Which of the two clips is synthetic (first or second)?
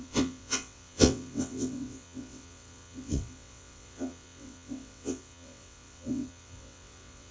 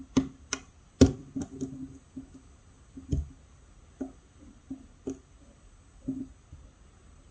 first